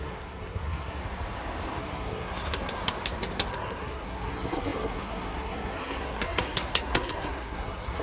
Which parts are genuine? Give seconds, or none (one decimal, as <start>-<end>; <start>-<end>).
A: 1.0-1.8; 2.8-3.5